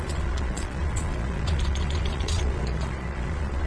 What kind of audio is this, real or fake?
fake